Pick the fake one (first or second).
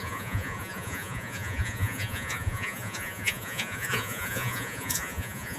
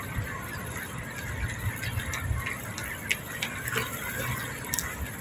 first